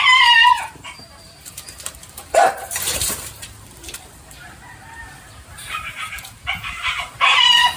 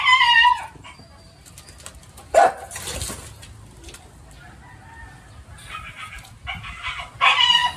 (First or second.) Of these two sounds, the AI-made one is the first